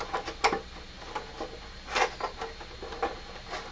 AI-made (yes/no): no